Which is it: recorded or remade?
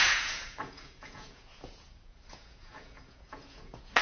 remade